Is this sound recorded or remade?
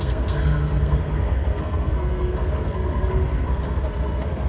remade